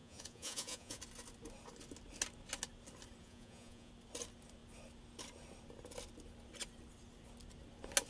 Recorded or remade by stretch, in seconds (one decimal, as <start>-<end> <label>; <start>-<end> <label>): 0.0-1.0 remade; 1.0-3.2 recorded; 3.2-3.9 remade; 3.9-8.1 recorded